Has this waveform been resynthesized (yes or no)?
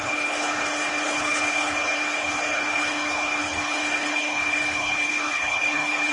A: yes